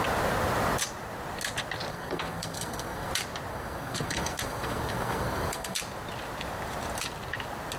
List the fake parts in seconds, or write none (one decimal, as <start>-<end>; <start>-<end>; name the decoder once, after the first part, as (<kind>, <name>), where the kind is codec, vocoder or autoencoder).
1.9-3.1 (codec, SNAC); 3.5-5.8